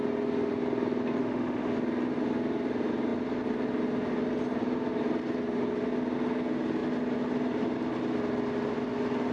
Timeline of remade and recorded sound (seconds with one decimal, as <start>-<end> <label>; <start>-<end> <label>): 0.0-1.2 recorded; 1.2-1.7 remade; 1.7-9.3 recorded